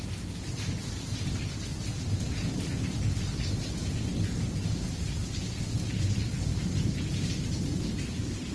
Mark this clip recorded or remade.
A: recorded